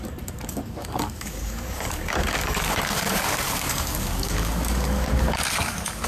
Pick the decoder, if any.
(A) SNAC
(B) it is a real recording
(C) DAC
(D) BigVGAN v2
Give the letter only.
C